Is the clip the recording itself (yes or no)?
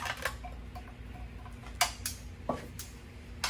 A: yes